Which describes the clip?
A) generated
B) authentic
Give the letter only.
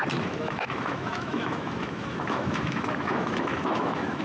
A